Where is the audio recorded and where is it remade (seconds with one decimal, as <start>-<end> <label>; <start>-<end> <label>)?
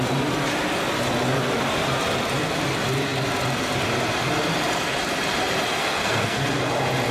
0.0-5.8 recorded; 5.8-6.5 remade; 6.5-7.1 recorded